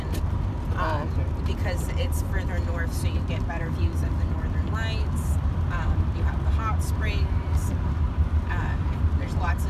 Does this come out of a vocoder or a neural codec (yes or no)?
no